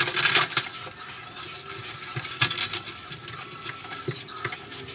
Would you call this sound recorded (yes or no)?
yes